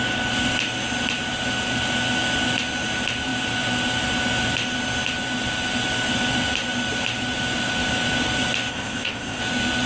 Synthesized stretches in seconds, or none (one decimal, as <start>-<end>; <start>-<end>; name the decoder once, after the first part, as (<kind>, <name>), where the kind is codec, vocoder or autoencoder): 8.7-9.4 (codec, ZipCodec)